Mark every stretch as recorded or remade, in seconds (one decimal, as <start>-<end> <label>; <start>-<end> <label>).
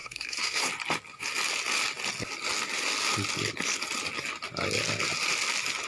0.0-0.7 remade; 0.7-5.9 recorded